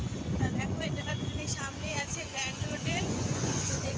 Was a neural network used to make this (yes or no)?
yes